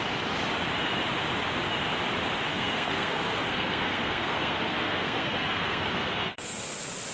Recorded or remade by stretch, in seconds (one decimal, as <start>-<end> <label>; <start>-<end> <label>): 0.0-2.5 recorded; 2.5-6.6 remade; 6.6-7.1 recorded